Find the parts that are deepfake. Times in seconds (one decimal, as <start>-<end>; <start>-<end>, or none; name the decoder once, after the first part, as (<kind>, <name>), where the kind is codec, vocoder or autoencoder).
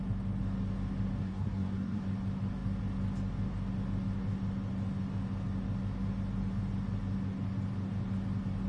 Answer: 1.2-2.0 (codec, SNAC)